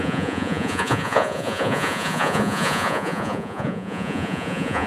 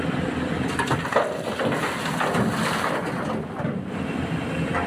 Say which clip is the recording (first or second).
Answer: second